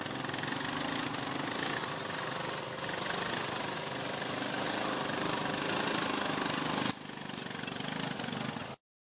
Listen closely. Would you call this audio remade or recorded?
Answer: recorded